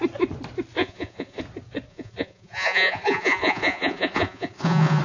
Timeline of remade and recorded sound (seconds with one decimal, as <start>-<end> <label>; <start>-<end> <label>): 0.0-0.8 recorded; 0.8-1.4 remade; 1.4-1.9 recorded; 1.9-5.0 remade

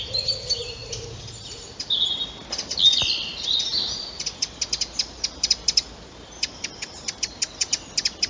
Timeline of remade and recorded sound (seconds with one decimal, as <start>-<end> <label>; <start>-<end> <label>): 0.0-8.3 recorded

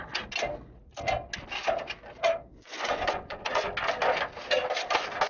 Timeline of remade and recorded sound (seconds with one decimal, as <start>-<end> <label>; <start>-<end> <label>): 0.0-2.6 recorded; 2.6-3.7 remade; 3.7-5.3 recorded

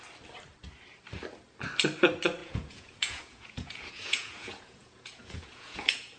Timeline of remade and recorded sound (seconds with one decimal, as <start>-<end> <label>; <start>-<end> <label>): 0.0-2.4 recorded; 2.4-6.2 remade

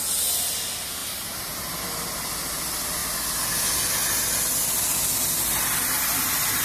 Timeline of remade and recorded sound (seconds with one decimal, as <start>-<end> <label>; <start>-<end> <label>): 0.0-6.6 recorded

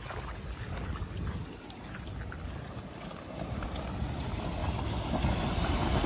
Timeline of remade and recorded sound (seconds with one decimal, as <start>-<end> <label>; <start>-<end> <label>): 0.0-6.1 recorded

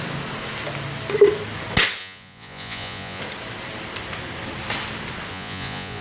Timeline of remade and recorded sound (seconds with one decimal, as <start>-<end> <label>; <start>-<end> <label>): 0.0-2.0 recorded; 2.0-3.2 remade; 3.2-5.3 recorded; 5.3-6.0 remade

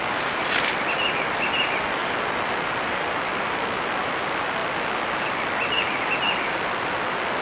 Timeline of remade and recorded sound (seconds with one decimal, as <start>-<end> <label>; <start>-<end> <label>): 0.0-7.4 recorded